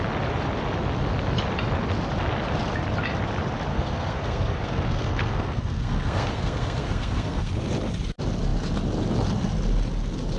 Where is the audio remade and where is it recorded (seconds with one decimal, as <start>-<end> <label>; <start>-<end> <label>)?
0.0-3.7 recorded; 3.7-7.5 remade; 7.5-10.4 recorded